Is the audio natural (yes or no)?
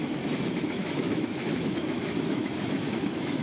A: no